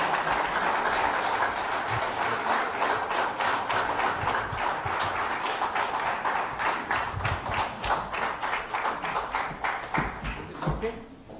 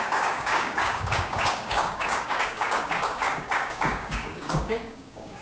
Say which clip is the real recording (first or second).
first